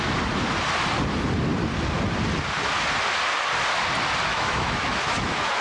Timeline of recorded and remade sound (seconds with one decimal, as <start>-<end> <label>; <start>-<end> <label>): 0.0-4.3 recorded; 4.3-5.6 remade